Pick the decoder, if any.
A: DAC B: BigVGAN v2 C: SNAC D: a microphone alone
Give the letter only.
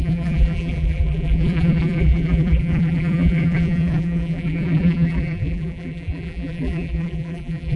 B